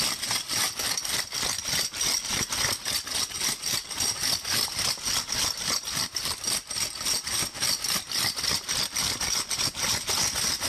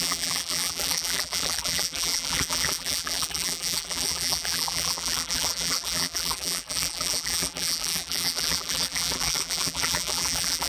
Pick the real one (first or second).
first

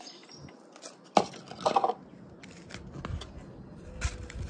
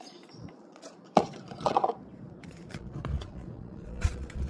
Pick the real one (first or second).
first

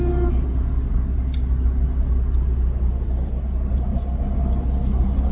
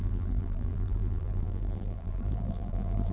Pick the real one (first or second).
first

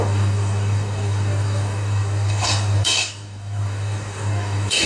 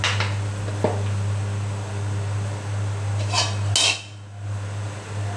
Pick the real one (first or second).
second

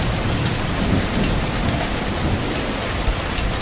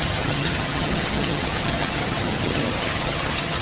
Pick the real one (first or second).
first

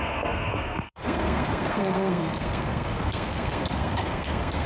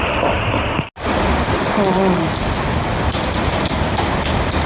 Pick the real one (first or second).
second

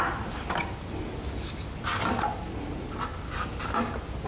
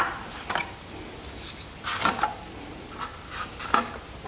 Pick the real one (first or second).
first